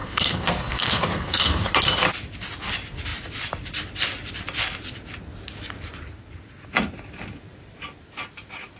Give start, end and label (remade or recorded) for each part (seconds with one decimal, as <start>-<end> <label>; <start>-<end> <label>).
0.0-1.7 remade; 1.7-8.8 recorded

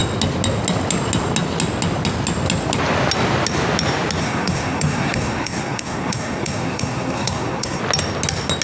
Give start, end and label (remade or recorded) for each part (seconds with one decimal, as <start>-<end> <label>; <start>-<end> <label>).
0.0-4.2 recorded; 4.2-7.8 remade; 7.8-8.6 recorded